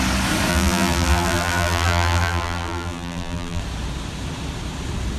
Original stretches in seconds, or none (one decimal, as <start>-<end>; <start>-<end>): 0.0-0.5; 3.6-5.2